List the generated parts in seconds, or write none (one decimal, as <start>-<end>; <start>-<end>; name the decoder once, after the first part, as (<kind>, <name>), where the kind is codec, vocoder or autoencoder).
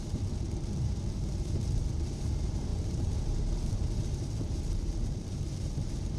0.0-6.2 (vocoder, BigVGAN v2)